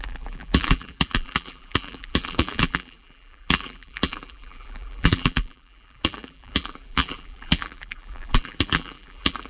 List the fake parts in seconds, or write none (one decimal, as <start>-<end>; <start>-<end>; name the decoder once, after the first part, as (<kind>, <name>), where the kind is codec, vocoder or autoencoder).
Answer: 0.0-9.5 (vocoder, BigVGAN v2)